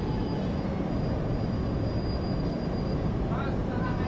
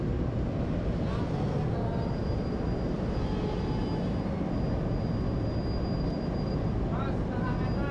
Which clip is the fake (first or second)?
first